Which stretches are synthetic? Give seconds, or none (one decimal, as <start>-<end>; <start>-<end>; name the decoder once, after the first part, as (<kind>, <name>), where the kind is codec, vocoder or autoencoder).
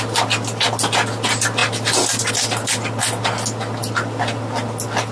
none